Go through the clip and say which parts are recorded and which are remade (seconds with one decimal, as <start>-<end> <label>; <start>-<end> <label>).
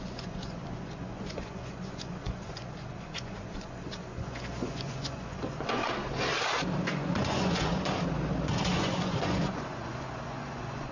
0.0-5.8 remade; 5.8-6.9 recorded; 6.9-7.7 remade; 7.7-8.7 recorded; 8.7-10.9 remade